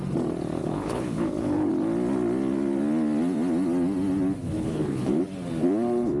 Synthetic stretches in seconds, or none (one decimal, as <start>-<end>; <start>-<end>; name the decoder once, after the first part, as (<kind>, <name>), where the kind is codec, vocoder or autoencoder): 0.6-1.7 (codec, HILCodec); 4.4-5.2